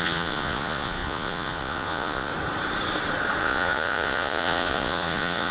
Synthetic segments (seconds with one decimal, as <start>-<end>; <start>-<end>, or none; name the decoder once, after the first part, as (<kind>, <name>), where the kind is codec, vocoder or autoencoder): 0.0-2.3 (vocoder, Vocos); 3.4-5.5